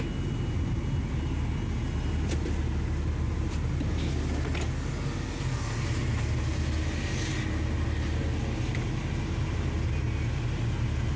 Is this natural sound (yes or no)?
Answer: yes